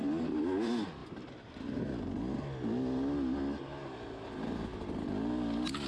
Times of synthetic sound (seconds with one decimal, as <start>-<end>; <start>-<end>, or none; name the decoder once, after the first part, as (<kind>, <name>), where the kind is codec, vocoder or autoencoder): none